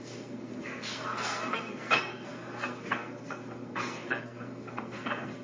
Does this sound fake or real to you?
fake